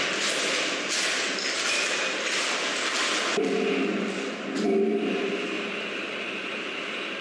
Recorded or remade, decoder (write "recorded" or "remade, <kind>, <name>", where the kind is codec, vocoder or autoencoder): recorded